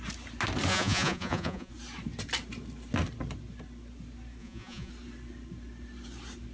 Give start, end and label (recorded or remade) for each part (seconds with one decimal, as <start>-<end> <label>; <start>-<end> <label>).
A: 0.0-0.7 recorded; 0.7-1.7 remade; 1.7-4.4 recorded; 4.4-4.9 remade; 4.9-6.5 recorded